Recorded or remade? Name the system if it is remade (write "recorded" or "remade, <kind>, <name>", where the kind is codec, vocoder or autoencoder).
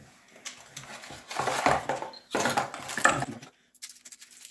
recorded